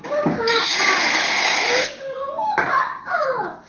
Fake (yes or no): yes